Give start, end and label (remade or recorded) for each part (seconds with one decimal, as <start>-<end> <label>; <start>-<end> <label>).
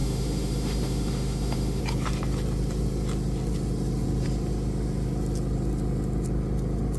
0.0-1.8 remade; 1.8-7.0 recorded